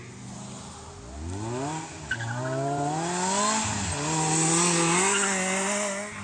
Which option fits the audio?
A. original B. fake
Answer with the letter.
A